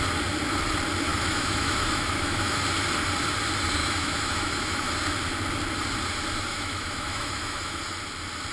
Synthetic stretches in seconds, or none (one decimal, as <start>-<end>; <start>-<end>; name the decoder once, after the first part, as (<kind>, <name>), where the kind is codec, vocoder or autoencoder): 1.1-2.6 (autoencoder, DAC-VAE); 3.8-4.9; 6.5-7.8